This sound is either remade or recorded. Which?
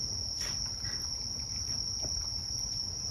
recorded